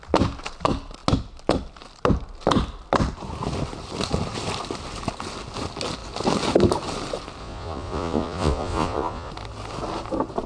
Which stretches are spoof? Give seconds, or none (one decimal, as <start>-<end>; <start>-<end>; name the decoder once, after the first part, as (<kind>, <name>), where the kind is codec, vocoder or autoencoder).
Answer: 7.4-9.3 (vocoder, Vocos)